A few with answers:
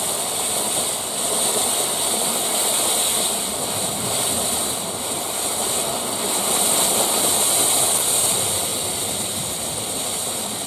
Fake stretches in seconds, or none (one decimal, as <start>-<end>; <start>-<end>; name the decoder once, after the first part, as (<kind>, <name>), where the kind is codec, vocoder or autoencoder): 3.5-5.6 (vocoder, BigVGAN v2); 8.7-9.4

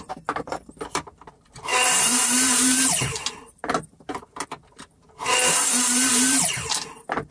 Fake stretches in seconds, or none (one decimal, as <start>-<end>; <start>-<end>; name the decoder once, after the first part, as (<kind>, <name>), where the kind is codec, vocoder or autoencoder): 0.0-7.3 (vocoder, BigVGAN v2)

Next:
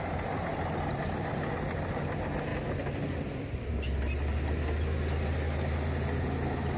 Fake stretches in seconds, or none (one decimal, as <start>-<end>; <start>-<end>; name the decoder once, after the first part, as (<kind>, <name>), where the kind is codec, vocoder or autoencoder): 0.5-1.4 (vocoder, BigVGAN v2); 2.5-3.7

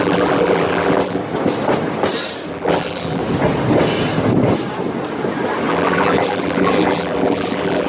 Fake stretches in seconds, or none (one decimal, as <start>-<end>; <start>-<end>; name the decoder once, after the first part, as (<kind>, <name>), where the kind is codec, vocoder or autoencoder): 0.0-1.2 (vocoder, BigVGAN v2); 2.5-3.2; 5.7-7.9

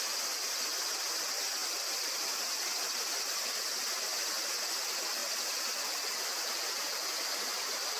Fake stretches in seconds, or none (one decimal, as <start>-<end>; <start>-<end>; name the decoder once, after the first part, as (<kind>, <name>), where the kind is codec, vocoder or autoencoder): 1.6-4.5 (vocoder, BigVGAN v2); 5.2-6.6

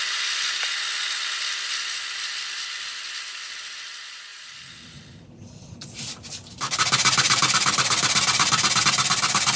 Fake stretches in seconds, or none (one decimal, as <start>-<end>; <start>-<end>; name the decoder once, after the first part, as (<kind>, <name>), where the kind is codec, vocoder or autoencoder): 4.3-8.8 (vocoder, BigVGAN v2)

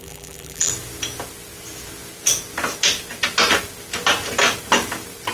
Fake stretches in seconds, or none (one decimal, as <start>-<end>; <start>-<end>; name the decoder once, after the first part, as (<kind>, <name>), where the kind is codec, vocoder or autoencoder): 0.0-0.7 (vocoder, BigVGAN v2)

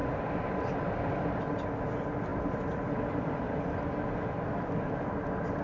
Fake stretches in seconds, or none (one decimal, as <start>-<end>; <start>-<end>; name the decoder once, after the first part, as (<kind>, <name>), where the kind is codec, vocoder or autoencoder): 0.0-0.5 (vocoder, BigVGAN v2); 2.3-3.8